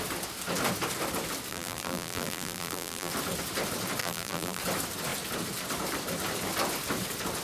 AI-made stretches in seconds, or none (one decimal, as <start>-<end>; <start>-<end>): 1.5-3.1; 4.0-4.6